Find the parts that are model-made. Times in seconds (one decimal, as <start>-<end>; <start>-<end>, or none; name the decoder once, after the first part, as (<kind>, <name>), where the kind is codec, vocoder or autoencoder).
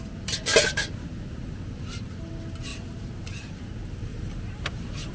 2.7-3.5 (vocoder, BigVGAN v2); 4.1-5.1